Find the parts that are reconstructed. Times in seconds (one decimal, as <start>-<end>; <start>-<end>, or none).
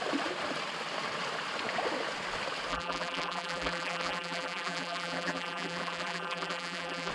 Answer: 2.7-7.1